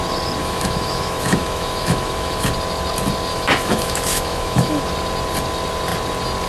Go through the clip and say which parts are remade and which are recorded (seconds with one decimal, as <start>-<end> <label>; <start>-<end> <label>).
0.0-0.4 recorded; 0.4-2.5 remade; 2.5-3.3 recorded; 3.3-4.8 remade; 4.8-6.5 recorded